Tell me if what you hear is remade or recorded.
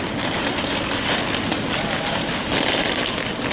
recorded